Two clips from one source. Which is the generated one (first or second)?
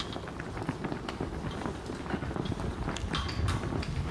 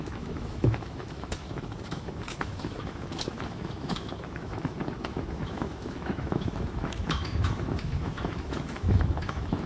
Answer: second